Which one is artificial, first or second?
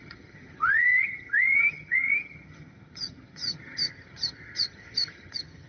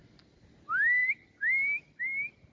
first